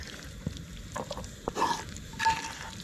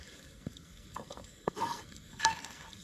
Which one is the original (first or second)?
first